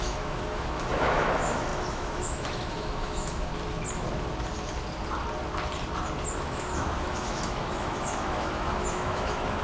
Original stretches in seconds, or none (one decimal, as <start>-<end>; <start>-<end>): 3.5-6.4